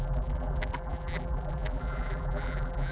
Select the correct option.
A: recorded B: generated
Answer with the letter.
B